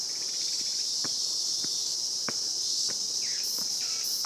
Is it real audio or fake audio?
fake